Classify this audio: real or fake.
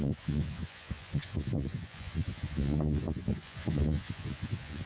fake